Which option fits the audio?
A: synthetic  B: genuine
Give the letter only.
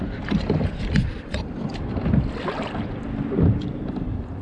A